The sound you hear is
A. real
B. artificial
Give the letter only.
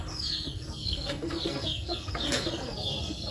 B